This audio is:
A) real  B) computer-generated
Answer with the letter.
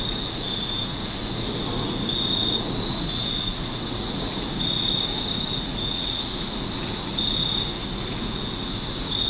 B